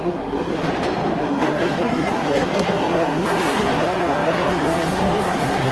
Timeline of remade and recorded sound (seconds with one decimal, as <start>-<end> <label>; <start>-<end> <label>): 0.0-0.7 remade; 0.7-1.2 recorded; 1.2-5.7 remade